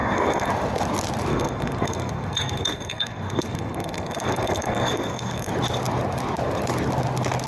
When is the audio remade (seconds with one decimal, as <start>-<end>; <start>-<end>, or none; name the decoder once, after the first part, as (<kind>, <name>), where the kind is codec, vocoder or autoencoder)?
0.0-0.5 (codec, SNAC); 1.3-5.5